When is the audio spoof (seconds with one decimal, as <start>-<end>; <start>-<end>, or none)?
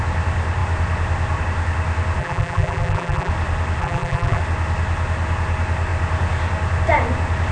2.2-3.3; 3.8-4.4